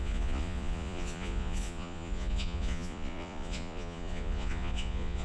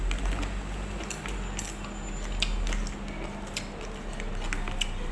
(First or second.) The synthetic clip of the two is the first